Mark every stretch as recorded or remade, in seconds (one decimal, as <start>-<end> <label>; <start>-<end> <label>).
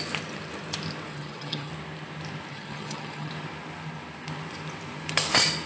0.0-1.1 recorded; 1.1-1.7 remade; 1.7-2.5 recorded; 2.5-3.3 remade; 3.3-5.7 recorded